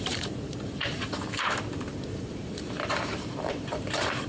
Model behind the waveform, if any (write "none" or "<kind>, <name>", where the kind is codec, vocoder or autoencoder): vocoder, BigVGAN v2